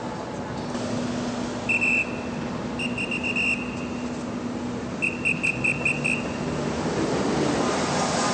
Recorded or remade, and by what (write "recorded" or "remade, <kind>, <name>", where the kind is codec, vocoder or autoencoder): recorded